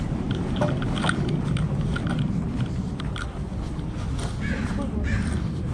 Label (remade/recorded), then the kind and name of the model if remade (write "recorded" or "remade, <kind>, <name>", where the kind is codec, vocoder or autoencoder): recorded